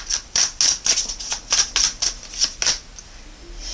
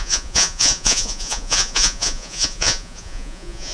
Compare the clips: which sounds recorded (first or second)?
first